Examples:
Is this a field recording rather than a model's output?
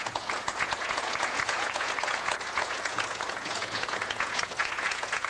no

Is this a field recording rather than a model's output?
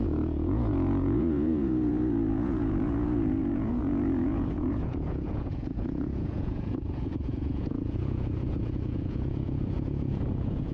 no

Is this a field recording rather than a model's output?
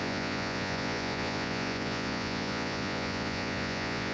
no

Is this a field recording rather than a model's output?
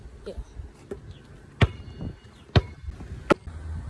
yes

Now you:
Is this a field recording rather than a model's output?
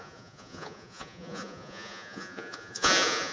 no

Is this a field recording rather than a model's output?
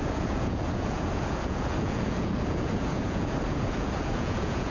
no